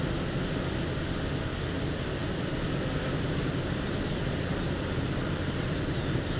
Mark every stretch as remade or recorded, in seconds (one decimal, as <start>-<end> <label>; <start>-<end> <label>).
0.0-6.4 recorded

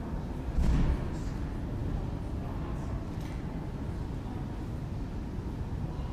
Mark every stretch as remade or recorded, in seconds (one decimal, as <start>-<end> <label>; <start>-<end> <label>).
0.0-6.1 recorded

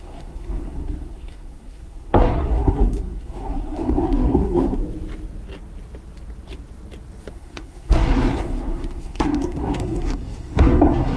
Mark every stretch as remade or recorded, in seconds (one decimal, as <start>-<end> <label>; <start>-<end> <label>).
0.0-4.8 remade; 4.8-7.3 recorded; 7.3-11.2 remade

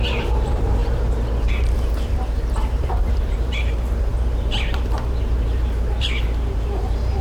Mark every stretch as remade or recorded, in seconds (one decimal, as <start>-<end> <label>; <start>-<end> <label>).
0.0-0.8 remade; 0.8-1.4 recorded; 1.4-7.2 remade

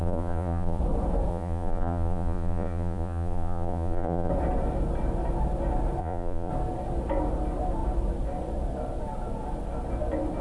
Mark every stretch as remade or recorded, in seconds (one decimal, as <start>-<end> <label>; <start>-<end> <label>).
0.0-0.8 remade; 0.8-1.3 recorded; 1.3-4.3 remade; 4.3-6.0 recorded; 6.0-6.5 remade; 6.5-10.4 recorded

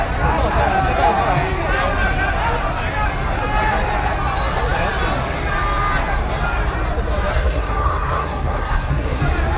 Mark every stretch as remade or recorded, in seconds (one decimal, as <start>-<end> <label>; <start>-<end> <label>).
0.0-7.3 recorded; 7.3-9.2 remade; 9.2-9.6 recorded

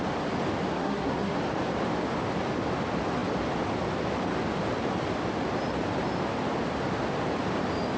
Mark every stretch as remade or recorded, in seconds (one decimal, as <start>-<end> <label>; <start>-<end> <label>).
0.0-0.7 recorded; 0.7-1.4 remade; 1.4-8.0 recorded